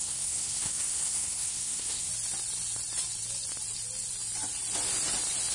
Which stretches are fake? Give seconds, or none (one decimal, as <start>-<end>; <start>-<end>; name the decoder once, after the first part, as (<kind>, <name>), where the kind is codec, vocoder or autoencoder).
0.0-2.1 (codec, SNAC)